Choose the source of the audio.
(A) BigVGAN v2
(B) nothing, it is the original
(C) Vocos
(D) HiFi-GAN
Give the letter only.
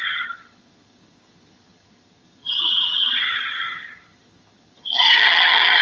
D